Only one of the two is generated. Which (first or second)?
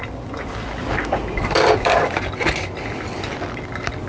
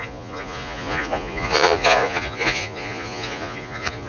second